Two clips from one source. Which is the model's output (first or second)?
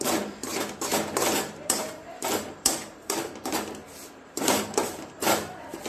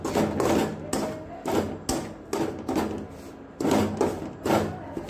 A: first